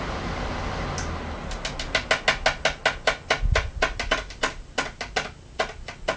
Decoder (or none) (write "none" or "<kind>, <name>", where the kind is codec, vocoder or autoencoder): none